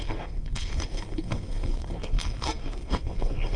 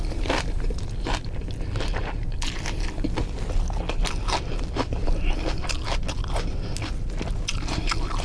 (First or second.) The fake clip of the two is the first